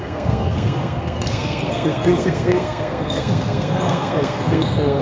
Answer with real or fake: fake